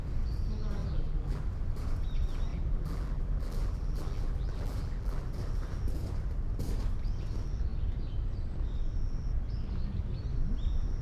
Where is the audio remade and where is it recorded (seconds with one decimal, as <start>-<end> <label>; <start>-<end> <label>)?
0.0-0.8 recorded; 0.8-1.4 remade; 1.4-2.5 recorded; 2.5-5.3 remade; 5.3-11.0 recorded